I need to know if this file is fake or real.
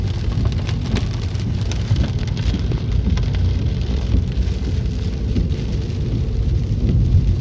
fake